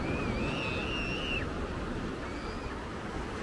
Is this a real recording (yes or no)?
yes